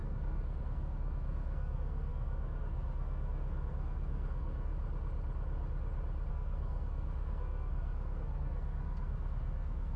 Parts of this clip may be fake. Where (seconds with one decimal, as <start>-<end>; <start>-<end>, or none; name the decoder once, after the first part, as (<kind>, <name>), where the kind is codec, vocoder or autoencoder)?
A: 0.0-4.7 (codec, SNAC); 6.3-10.0